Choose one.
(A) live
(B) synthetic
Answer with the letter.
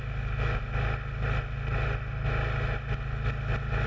A